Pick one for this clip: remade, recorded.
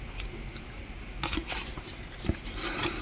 recorded